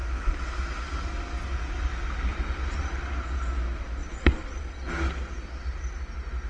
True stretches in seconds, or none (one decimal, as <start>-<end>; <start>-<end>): 0.0-2.3; 2.9-4.0; 4.6-6.5